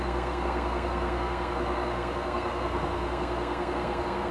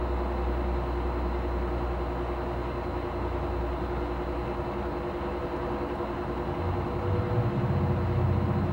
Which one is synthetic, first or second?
first